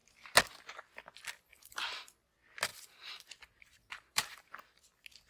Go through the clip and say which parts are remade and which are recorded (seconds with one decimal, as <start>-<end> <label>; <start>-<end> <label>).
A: 0.0-1.5 recorded; 1.5-2.1 remade; 2.1-2.7 recorded; 2.7-4.8 remade; 4.8-5.3 recorded